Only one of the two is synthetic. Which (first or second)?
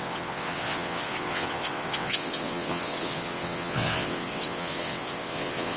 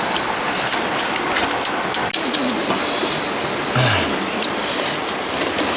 first